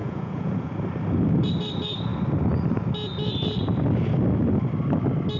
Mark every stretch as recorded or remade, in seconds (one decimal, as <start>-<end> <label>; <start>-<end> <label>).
0.0-0.7 remade; 0.7-5.4 recorded